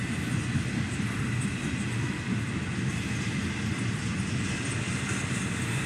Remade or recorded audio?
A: recorded